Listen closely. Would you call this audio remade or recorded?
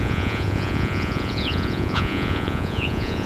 remade